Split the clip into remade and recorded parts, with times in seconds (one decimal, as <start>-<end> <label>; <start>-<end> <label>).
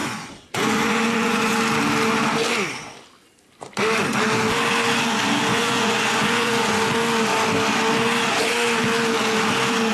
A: 0.0-1.5 remade; 1.5-5.5 recorded; 5.5-6.7 remade; 6.7-9.9 recorded